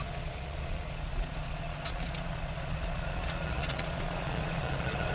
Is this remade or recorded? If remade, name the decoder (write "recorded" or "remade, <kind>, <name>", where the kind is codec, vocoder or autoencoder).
remade, vocoder, Vocos